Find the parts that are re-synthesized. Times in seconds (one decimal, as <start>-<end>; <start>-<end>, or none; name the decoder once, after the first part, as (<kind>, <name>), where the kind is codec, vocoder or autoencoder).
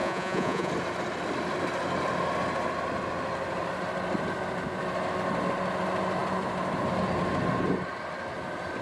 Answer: 0.0-0.7 (vocoder, Vocos)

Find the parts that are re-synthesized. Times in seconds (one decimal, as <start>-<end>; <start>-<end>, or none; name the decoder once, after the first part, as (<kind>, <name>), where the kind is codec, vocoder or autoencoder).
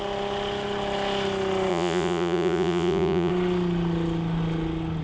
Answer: 1.7-3.3 (vocoder, Vocos)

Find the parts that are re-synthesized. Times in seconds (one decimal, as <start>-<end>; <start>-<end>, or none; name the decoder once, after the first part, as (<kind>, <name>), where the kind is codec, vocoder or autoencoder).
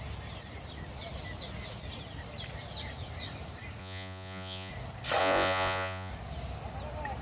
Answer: 3.8-4.7 (vocoder, Vocos); 5.2-6.1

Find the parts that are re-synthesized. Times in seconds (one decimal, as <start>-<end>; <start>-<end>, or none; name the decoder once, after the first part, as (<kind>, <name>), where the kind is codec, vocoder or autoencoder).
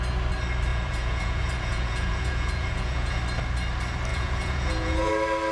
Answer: 0.7-3.2 (vocoder, Vocos); 4.1-5.1